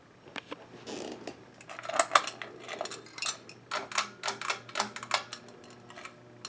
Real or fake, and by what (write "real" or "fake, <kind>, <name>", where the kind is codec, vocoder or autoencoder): real